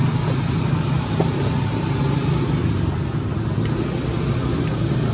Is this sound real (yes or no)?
yes